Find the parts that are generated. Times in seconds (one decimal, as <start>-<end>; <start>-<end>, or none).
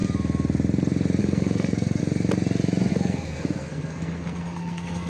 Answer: 1.2-2.0; 2.9-5.1